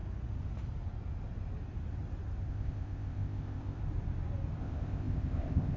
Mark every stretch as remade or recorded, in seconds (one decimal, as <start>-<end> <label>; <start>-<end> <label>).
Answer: 0.0-2.5 recorded; 2.5-3.8 remade; 3.8-4.6 recorded; 4.6-5.8 remade